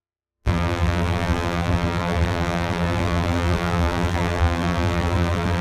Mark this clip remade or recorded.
remade